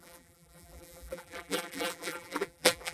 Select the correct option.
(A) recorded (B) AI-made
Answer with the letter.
B